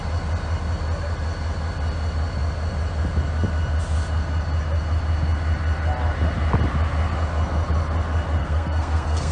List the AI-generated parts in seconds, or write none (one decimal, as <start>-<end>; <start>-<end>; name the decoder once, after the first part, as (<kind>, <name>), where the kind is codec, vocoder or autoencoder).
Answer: 8.4-9.3 (codec, SNAC)

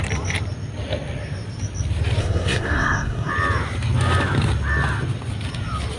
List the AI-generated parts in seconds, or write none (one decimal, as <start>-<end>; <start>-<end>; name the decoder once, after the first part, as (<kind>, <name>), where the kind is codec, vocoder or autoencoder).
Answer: 2.2-3.3 (codec, SNAC)

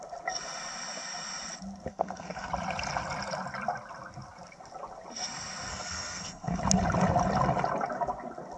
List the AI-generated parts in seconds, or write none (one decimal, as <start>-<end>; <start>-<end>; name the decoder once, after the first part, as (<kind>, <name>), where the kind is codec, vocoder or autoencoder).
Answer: 1.9-2.5 (codec, SNAC); 5.7-6.6